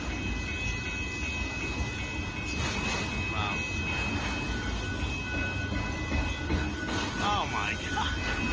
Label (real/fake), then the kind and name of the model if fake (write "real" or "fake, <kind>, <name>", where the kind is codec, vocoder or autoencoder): real